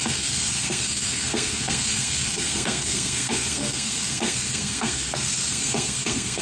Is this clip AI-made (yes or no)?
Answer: yes